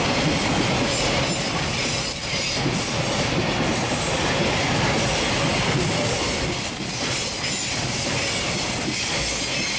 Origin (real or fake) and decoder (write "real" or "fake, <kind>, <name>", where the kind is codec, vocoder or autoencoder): real